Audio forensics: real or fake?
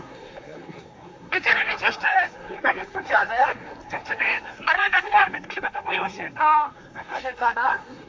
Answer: fake